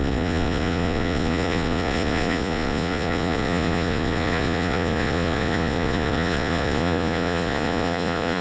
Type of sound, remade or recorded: remade